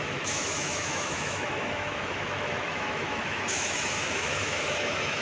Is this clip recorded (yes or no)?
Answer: no